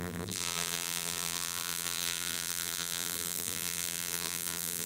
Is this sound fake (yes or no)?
yes